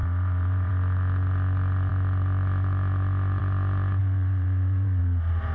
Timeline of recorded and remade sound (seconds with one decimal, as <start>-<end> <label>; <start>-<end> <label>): 0.0-0.7 remade; 0.7-4.0 recorded; 4.0-5.0 remade; 5.0-5.5 recorded

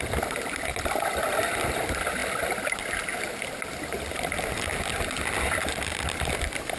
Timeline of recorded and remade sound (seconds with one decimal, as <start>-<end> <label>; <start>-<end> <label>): 0.0-0.7 remade; 0.7-1.6 recorded; 1.6-2.2 remade; 2.2-6.3 recorded; 6.3-6.8 remade